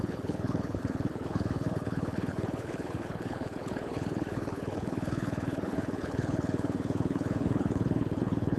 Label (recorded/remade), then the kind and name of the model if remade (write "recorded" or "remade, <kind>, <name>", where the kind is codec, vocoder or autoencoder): remade, codec, HILCodec